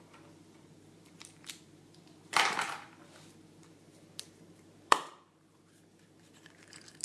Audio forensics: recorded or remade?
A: remade